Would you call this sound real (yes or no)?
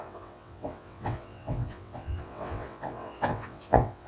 no